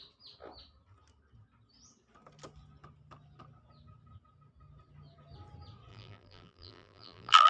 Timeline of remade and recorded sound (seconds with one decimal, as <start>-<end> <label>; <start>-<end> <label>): 0.0-5.9 recorded; 5.9-7.5 remade